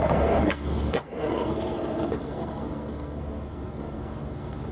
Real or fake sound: fake